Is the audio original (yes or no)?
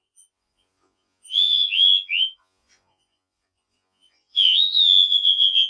no